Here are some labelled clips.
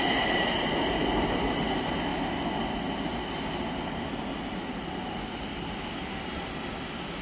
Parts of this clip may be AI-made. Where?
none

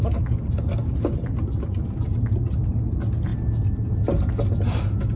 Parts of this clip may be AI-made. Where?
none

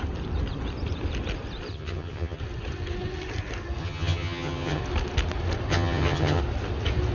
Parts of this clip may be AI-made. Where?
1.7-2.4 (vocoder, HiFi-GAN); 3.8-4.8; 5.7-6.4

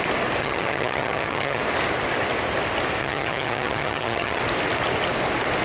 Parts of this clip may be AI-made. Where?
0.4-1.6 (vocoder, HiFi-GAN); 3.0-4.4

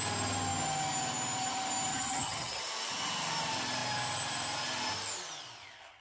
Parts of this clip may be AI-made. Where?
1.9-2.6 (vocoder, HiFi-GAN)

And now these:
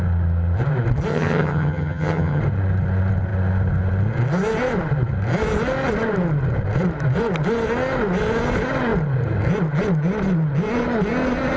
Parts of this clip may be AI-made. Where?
1.1-2.4 (vocoder, HiFi-GAN)

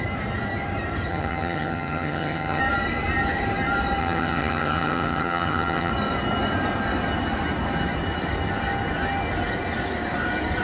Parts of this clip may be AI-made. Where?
1.1-2.6 (vocoder, HiFi-GAN); 4.0-5.9

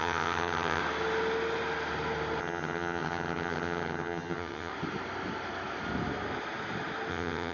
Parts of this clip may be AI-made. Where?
0.0-0.8 (vocoder, HiFi-GAN); 2.4-4.7; 7.1-7.5